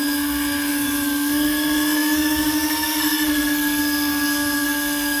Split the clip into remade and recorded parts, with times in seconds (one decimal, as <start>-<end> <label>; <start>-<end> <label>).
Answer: 0.0-5.2 remade